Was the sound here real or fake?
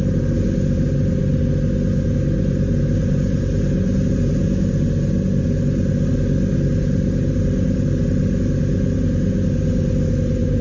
real